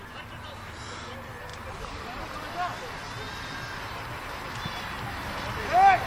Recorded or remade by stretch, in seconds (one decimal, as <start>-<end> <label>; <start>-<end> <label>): 0.0-1.5 recorded; 1.5-2.2 remade; 2.2-6.1 recorded